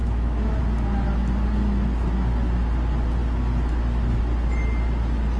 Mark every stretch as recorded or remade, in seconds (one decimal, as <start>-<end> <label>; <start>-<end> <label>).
0.0-0.6 remade; 0.6-5.4 recorded